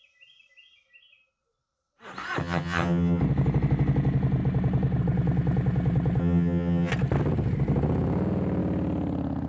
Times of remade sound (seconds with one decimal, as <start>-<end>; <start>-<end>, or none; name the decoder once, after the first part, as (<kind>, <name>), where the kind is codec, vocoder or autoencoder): 2.4-3.2 (vocoder, HiFi-GAN); 6.2-6.9

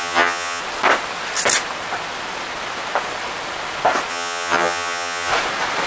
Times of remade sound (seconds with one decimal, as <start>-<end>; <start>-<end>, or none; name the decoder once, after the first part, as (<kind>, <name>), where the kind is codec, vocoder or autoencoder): 0.0-0.6 (vocoder, HiFi-GAN); 4.1-5.3

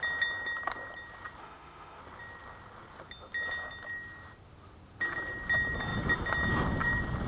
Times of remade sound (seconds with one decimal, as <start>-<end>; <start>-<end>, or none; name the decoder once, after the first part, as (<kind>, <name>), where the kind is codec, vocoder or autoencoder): 1.4-2.0 (autoencoder, DAC-VAE)

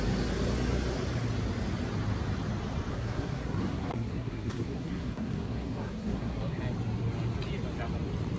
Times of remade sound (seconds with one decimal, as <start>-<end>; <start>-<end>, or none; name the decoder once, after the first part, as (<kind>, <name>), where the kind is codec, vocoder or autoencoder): 2.9-6.6 (codec, SNAC)

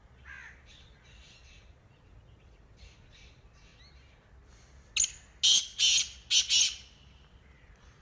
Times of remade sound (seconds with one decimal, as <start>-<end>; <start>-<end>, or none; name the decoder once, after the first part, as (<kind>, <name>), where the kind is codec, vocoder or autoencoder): 0.0-3.7 (vocoder, Vocos); 7.3-8.0